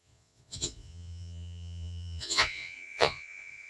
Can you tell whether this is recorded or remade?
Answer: remade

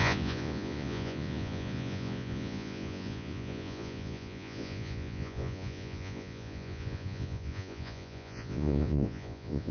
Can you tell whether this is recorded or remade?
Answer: remade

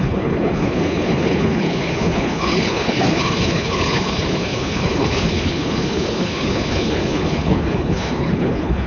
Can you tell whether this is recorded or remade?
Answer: remade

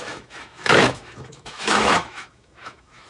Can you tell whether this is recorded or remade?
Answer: remade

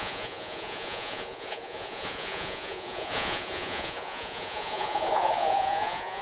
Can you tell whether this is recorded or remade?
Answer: remade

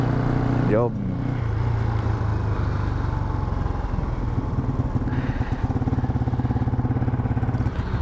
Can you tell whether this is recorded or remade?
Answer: recorded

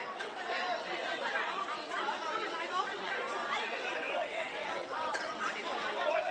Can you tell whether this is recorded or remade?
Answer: remade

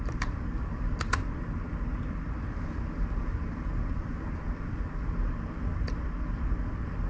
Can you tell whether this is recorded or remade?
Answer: recorded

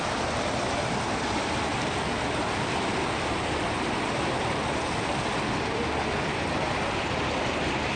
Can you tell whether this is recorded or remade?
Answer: recorded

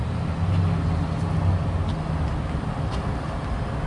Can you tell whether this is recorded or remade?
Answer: recorded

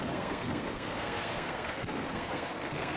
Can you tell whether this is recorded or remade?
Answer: remade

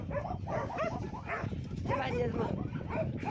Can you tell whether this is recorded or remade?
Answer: remade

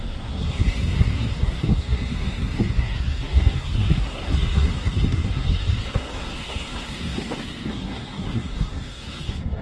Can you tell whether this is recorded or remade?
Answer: remade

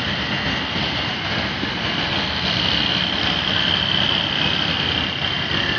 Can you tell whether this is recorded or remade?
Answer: recorded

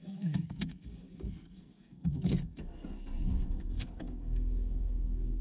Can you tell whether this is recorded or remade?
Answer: remade